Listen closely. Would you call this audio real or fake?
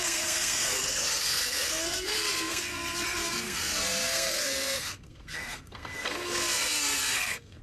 fake